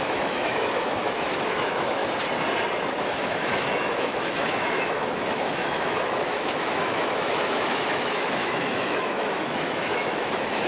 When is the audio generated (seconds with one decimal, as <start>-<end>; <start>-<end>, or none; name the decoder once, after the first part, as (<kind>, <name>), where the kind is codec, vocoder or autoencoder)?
0.0-2.0 (autoencoder, DAC-VAE); 3.0-10.7